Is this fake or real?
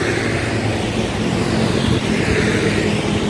real